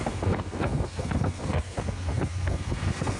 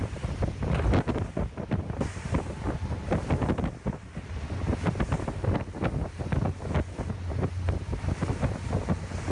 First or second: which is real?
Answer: second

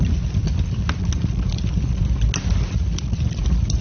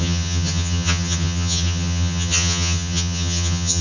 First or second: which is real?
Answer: first